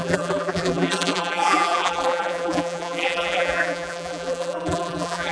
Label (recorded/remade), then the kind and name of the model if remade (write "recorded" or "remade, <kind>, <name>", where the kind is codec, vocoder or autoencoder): remade, vocoder, BigVGAN v2